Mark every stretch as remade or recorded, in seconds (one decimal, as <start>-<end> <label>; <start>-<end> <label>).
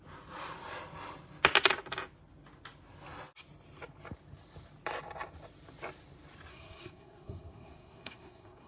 0.0-6.5 recorded; 6.5-8.7 remade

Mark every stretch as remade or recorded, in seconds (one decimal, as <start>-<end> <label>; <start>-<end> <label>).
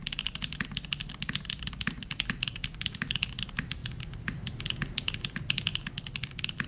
0.0-6.7 recorded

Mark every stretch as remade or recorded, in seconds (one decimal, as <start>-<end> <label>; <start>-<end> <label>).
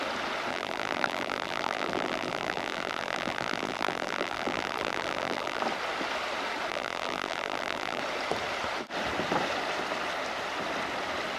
0.0-0.5 recorded; 0.5-5.6 remade; 5.6-6.7 recorded; 6.7-8.0 remade; 8.0-11.4 recorded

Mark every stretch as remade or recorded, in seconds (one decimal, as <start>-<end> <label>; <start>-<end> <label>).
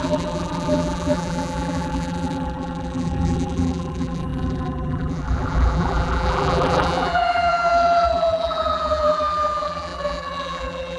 0.0-11.0 remade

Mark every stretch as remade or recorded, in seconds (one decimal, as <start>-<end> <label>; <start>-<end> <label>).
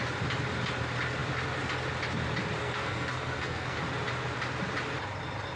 0.0-2.6 recorded; 2.6-3.8 remade; 3.8-5.6 recorded